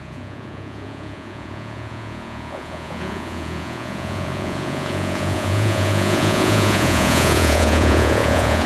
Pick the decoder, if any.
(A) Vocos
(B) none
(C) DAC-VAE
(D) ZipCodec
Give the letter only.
A